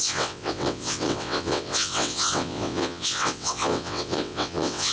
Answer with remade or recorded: remade